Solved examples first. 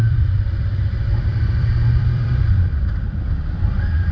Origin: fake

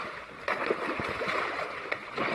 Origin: fake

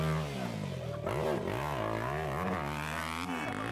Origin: real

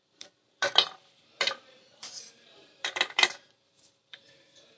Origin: fake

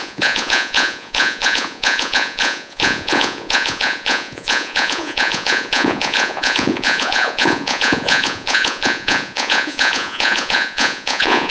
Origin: fake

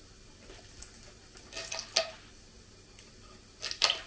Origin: real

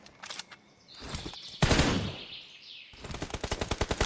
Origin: real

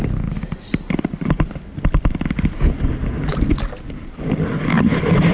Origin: real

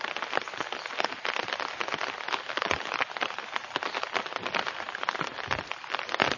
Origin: real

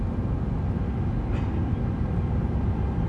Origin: real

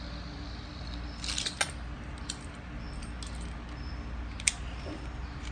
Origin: real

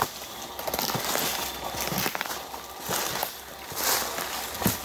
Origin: real